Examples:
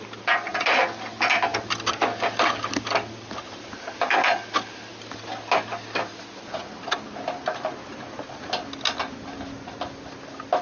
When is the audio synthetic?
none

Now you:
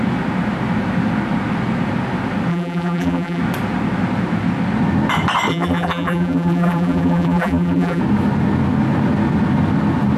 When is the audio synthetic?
2.5-3.4 (vocoder, BigVGAN v2); 5.5-8.0

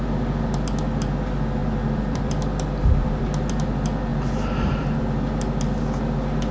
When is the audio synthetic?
1.6-2.9 (vocoder, BigVGAN v2); 4.1-5.0

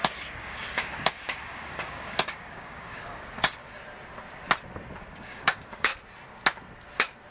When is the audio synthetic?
0.0-3.6 (codec, DAC); 5.0-5.9

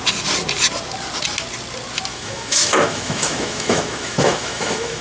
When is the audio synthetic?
2.1-5.0 (autoencoder, DAC-VAE)

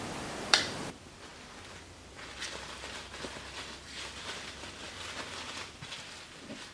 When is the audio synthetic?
0.0-6.7 (vocoder, BigVGAN v2)

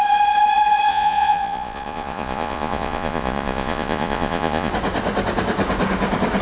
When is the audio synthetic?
0.9-4.7 (vocoder, Vocos)